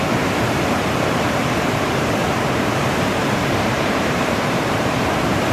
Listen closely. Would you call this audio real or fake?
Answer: fake